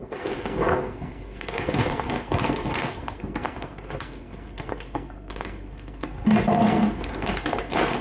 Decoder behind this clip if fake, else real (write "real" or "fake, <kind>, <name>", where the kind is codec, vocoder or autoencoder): fake, codec, SNAC